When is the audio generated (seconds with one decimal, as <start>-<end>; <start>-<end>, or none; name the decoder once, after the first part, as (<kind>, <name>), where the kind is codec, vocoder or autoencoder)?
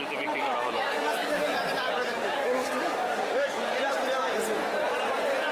0.4-3.7 (codec, DAC)